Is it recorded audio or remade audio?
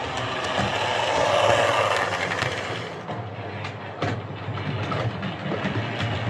recorded